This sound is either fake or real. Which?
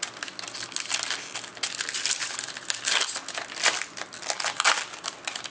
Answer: real